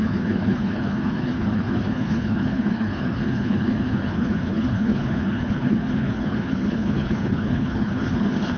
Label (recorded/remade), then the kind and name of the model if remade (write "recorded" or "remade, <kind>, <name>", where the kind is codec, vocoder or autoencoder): remade, codec, HILCodec